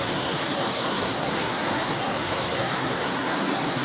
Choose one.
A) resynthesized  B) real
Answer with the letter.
A